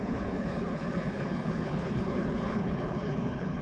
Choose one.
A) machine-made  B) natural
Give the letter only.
A